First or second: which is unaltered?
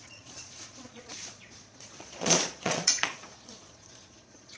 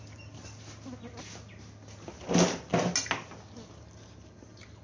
second